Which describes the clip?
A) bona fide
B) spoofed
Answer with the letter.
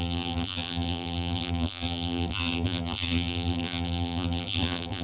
B